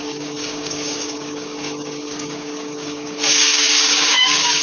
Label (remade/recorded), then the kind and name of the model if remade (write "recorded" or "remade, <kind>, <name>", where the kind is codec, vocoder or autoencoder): remade, codec, DAC